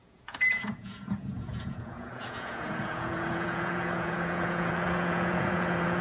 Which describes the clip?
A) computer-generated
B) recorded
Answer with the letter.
A